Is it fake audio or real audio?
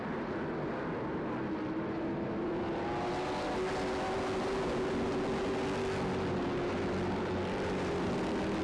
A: real